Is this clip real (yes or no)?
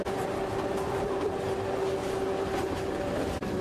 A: yes